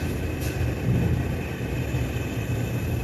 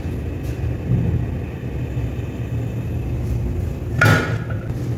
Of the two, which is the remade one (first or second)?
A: first